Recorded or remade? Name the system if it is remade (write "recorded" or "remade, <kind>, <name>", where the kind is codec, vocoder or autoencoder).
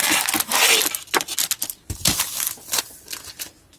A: recorded